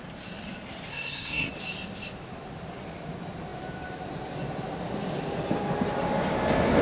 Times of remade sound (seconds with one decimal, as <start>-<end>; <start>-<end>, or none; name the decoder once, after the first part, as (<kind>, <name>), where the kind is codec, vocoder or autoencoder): 0.9-1.5 (codec, SNAC)